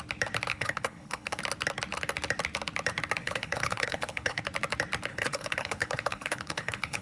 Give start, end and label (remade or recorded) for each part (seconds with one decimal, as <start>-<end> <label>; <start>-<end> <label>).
0.0-0.5 recorded; 0.5-1.4 remade; 1.4-3.2 recorded; 3.2-4.4 remade; 4.4-5.1 recorded; 5.1-7.0 remade